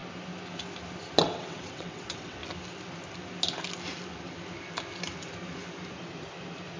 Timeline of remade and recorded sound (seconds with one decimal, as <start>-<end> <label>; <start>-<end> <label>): 0.0-1.2 recorded; 1.2-2.4 remade; 2.4-6.8 recorded